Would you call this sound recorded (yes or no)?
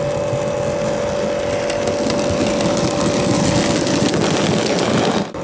yes